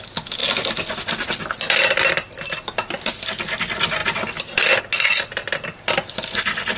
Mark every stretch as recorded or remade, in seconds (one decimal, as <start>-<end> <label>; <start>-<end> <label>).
0.0-6.8 recorded